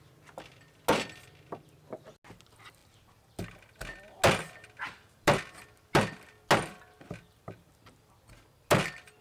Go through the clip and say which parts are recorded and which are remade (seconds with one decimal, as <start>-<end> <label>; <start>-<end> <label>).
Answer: 0.0-9.2 recorded